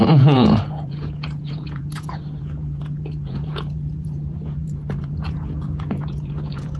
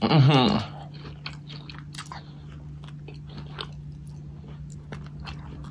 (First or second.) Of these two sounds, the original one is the second